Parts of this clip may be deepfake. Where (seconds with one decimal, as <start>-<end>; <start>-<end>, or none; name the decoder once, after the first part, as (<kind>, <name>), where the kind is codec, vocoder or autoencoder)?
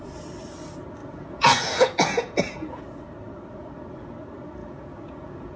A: 1.0-2.8 (vocoder, Vocos); 4.6-5.6